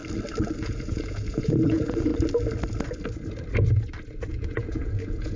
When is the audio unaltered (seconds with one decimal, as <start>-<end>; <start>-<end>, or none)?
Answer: 0.0-0.6; 2.1-4.3